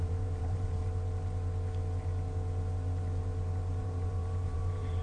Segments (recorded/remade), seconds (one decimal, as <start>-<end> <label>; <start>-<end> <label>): 0.0-0.8 remade; 0.8-3.8 recorded; 3.8-5.0 remade